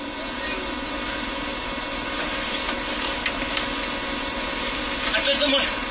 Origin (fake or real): real